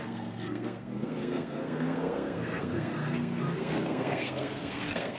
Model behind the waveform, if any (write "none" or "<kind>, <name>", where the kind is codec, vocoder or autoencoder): codec, SNAC